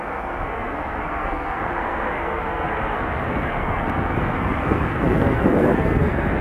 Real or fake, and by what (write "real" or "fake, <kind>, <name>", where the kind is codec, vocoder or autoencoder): fake, codec, SNAC